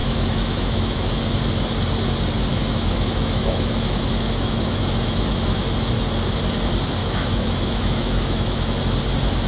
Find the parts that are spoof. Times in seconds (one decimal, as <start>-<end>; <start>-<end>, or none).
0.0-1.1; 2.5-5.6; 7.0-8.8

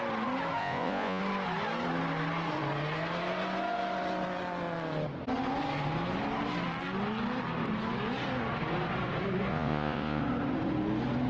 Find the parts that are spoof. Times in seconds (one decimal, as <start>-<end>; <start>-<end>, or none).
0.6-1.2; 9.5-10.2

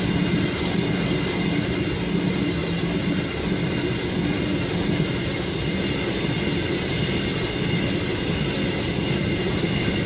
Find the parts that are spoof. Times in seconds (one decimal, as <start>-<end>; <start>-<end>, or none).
none

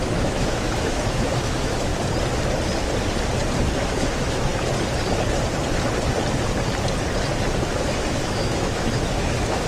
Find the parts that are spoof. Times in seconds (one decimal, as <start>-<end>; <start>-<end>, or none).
0.0-1.9; 3.7-4.5; 7.7-9.7